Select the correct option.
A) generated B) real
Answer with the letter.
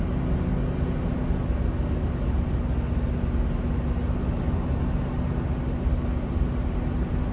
B